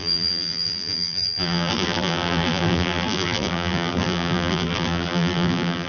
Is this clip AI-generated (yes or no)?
yes